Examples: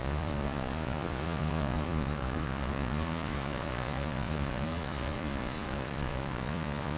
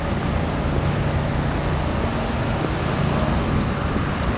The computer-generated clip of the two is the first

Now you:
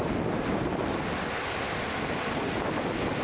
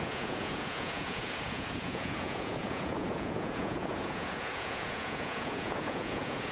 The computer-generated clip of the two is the second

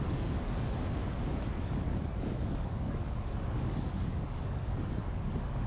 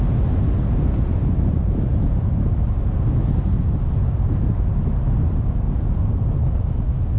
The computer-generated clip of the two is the first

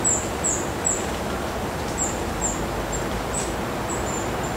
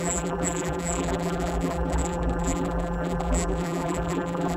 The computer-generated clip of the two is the second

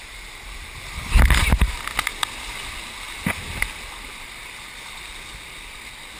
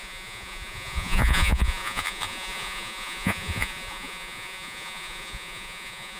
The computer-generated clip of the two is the second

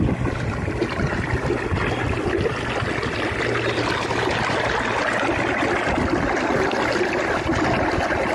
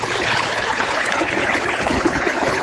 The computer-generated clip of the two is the second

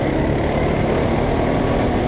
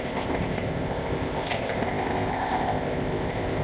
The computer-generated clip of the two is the second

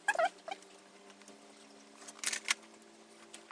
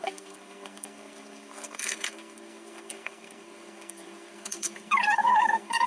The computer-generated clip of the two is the second